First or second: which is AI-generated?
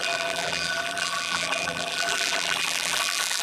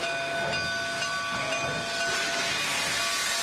first